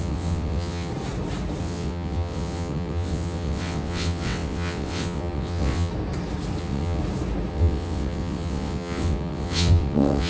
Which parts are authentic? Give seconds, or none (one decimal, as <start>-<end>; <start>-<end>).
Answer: 0.9-1.6; 5.9-6.6; 7.0-7.5